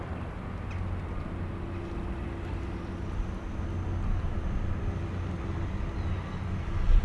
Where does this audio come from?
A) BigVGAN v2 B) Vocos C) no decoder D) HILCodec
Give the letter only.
C